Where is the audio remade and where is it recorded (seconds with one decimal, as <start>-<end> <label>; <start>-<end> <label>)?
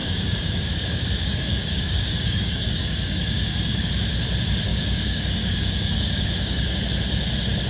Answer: 0.0-3.9 remade; 3.9-4.7 recorded; 4.7-6.8 remade; 6.8-7.7 recorded